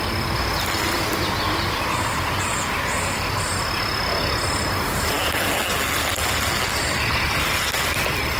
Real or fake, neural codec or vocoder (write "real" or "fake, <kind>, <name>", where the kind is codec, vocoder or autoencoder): real